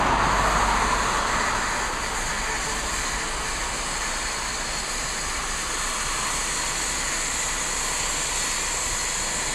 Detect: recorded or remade recorded